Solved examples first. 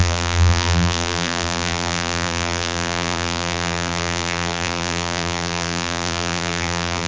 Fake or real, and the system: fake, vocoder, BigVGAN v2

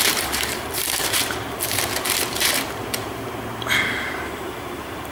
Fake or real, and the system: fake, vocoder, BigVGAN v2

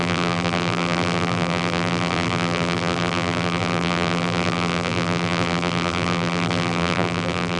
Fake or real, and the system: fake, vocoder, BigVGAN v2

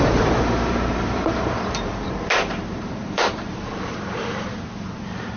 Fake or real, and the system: fake, vocoder, BigVGAN v2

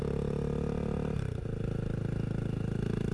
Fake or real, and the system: real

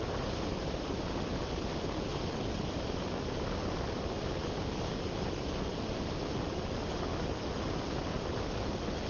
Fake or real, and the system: real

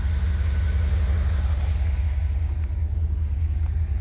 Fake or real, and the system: real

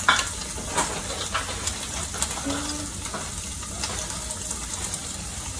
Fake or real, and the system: real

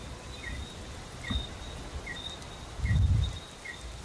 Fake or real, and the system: real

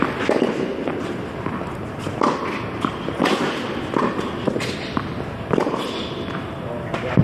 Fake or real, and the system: real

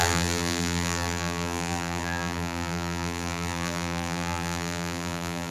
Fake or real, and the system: fake, vocoder, BigVGAN v2